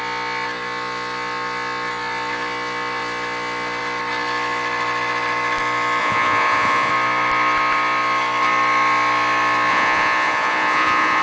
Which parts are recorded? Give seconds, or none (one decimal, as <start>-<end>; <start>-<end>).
0.0-6.0; 6.9-9.7